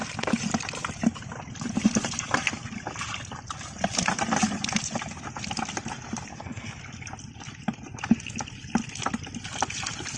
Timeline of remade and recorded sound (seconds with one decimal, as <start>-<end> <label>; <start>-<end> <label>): 0.0-6.3 recorded; 6.3-6.8 remade; 6.8-10.2 recorded